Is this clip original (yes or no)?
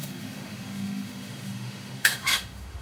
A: no